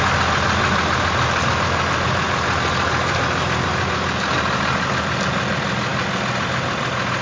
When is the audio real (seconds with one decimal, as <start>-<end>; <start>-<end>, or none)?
0.0-7.2